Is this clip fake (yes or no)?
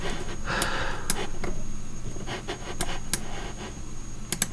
no